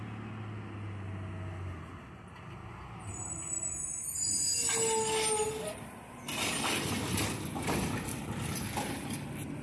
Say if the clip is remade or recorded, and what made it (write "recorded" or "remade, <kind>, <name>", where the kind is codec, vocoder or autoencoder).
recorded